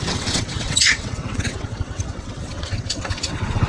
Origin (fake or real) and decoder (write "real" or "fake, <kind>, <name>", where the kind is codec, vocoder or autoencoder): fake, vocoder, WaveNeXt